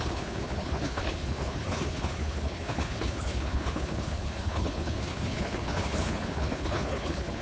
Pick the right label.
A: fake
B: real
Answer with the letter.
A